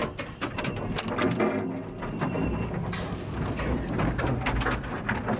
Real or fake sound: real